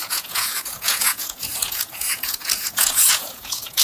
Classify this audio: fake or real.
fake